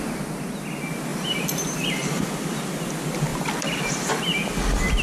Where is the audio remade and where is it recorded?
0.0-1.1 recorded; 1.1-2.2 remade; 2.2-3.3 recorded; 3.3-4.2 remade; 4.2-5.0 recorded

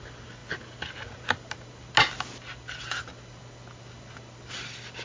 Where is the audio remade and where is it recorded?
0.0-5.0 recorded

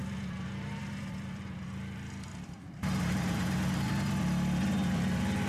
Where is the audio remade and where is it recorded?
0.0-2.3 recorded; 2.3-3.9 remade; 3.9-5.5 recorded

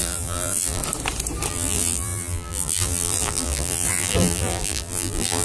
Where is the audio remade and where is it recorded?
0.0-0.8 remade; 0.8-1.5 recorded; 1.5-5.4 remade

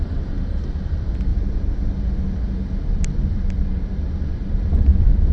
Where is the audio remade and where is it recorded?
0.0-1.3 remade; 1.3-2.9 recorded; 2.9-5.3 remade

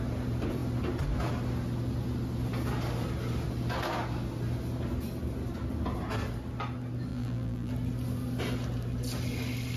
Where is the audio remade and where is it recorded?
0.0-7.1 recorded; 7.1-7.7 remade; 7.7-9.8 recorded